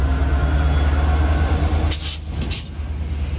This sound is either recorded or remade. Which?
recorded